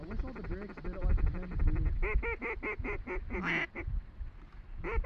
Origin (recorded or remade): recorded